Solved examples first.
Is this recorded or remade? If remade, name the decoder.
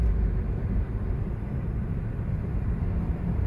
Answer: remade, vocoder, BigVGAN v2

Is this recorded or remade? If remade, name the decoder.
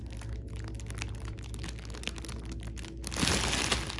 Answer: recorded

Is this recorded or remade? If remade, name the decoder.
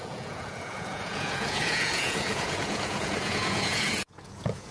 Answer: remade, vocoder, Vocos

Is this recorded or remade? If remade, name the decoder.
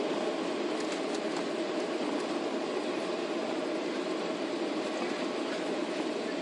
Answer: recorded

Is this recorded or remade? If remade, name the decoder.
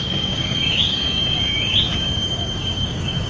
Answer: remade, codec, DAC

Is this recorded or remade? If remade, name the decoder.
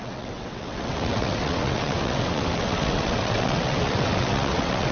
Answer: remade, vocoder, WaveNeXt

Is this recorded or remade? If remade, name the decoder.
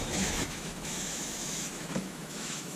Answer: remade, autoencoder, DAC-VAE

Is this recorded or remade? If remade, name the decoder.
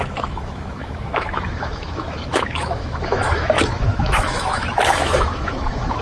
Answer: remade, autoencoder, DAC-VAE